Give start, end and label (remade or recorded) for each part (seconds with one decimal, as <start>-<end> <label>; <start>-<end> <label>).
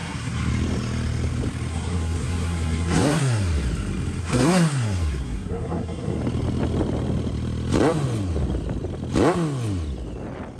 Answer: 0.0-0.5 remade; 0.5-1.7 recorded; 1.7-3.4 remade; 3.4-4.2 recorded; 4.2-6.2 remade; 6.2-10.6 recorded